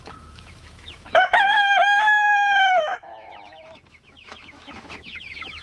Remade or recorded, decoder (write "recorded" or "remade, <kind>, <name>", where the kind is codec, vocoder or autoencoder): remade, autoencoder, DAC-VAE